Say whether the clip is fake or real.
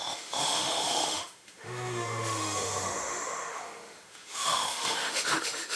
fake